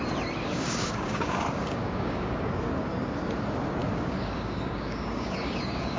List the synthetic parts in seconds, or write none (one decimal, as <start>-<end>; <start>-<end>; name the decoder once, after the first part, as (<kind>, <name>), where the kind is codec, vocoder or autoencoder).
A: 0.4-2.5 (codec, DAC); 3.8-6.0